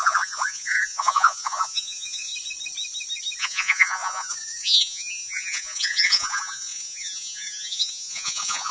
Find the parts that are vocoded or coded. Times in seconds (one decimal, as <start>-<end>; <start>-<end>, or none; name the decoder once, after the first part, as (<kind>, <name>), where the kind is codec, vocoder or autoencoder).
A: 0.0-2.3 (vocoder, Vocos); 3.4-8.7